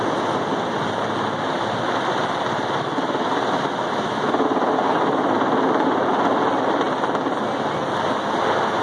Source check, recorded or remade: recorded